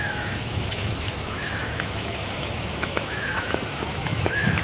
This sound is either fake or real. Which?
fake